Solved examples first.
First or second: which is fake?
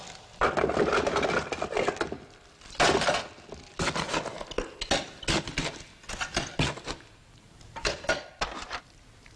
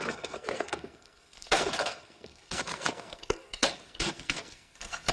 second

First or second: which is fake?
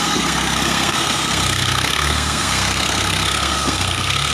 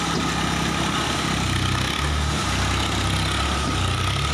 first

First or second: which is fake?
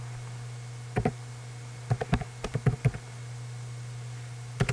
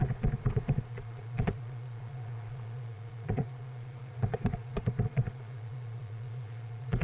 second